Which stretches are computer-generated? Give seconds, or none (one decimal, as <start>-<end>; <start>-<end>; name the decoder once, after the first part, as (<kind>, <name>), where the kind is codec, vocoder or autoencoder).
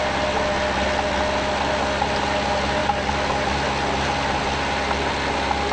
none